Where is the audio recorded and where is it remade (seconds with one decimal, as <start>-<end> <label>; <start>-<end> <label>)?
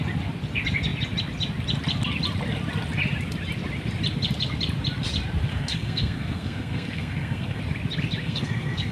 0.0-5.5 recorded; 5.5-7.6 remade; 7.6-8.2 recorded; 8.2-8.9 remade